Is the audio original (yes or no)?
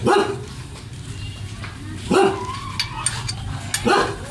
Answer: yes